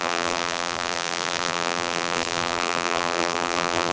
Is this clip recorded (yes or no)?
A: no